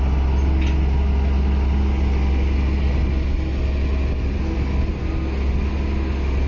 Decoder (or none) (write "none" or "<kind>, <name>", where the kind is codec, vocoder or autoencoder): none